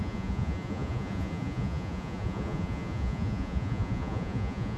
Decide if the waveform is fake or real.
fake